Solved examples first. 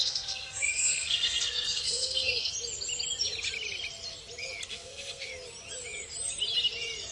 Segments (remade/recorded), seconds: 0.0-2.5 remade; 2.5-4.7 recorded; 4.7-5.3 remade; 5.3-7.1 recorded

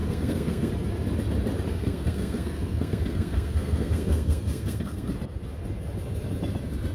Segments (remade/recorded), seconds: 0.0-0.7 remade; 0.7-1.7 recorded; 1.7-5.1 remade; 5.1-6.9 recorded